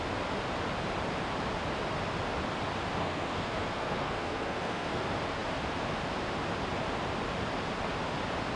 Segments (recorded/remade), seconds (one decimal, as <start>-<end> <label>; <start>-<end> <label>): 0.0-3.0 recorded; 3.0-5.0 remade; 5.0-8.6 recorded